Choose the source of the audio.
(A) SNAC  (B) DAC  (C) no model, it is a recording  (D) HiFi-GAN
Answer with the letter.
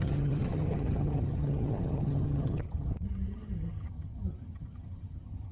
D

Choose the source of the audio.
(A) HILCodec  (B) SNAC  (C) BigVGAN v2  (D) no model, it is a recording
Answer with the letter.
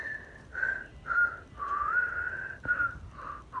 D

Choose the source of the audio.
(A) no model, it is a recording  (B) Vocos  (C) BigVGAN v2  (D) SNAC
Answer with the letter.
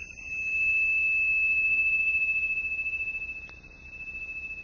A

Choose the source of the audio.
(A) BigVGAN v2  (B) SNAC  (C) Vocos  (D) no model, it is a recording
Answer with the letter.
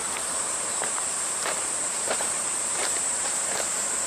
A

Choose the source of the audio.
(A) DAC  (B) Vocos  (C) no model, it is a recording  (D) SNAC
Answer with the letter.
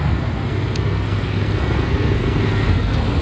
D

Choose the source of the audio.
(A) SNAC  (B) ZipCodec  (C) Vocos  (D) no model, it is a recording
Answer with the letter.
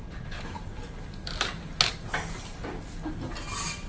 D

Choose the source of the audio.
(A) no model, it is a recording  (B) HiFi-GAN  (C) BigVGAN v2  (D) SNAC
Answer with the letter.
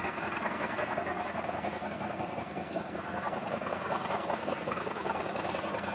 D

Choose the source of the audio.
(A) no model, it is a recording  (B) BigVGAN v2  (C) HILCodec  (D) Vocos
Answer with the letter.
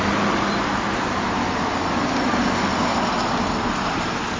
A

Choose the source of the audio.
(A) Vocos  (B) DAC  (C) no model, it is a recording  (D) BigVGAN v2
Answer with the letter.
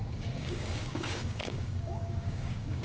B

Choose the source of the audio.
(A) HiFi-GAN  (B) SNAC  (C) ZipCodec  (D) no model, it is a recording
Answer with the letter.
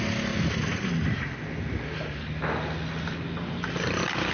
D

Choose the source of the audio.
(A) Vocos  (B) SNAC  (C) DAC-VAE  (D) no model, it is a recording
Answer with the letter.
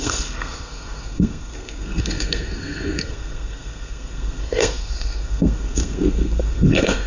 B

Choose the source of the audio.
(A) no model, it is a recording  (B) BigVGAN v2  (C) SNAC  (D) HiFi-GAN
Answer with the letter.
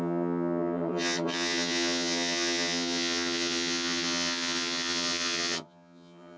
D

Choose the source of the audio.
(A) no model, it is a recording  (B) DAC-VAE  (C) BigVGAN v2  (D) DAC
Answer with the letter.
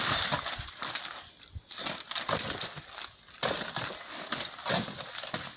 A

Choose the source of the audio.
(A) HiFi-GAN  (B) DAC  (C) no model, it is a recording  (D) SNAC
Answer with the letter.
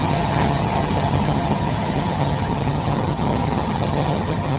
A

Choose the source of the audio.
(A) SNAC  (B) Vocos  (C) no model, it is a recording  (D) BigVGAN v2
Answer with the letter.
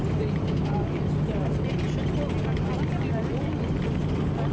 C